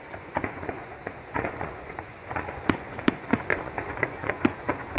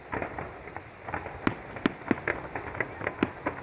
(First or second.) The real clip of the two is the second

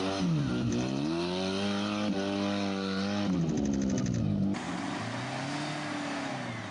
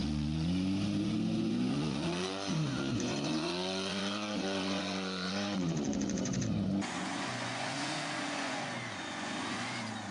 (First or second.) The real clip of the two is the first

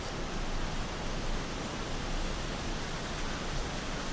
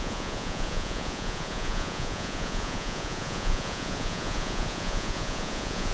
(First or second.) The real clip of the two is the first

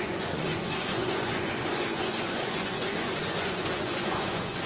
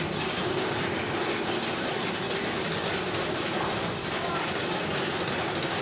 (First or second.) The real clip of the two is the second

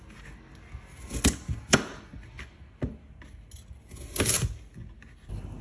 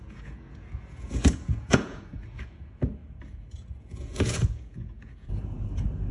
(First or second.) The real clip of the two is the first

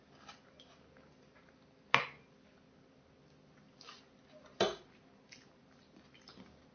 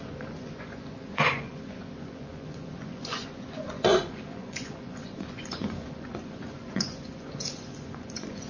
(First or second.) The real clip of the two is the first